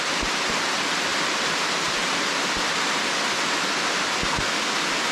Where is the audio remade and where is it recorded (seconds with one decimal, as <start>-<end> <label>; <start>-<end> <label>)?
0.0-5.1 recorded